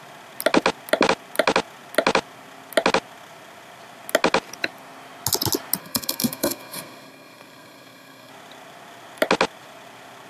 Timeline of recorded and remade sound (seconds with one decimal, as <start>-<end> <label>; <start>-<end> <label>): 0.0-5.8 recorded; 5.8-8.3 remade; 8.3-10.3 recorded